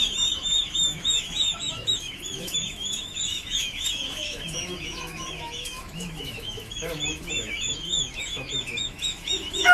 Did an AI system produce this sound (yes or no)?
yes